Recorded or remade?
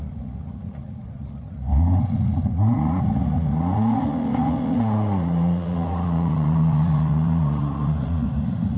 remade